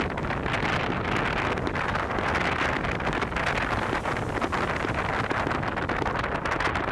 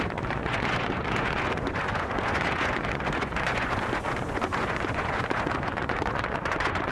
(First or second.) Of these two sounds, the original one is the first